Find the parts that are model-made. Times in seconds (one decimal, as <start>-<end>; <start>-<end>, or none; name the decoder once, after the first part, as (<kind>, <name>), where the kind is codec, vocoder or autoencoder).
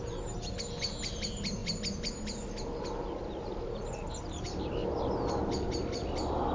none